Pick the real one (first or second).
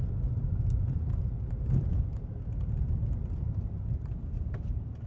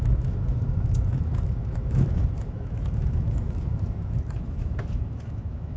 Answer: first